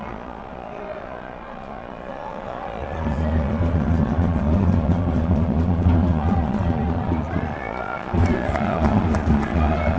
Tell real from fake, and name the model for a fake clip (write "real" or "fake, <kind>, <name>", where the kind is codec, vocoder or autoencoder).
fake, vocoder, Vocos